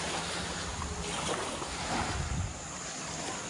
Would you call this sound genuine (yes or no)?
yes